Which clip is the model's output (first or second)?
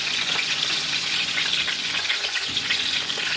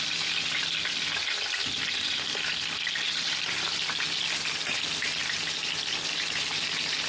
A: first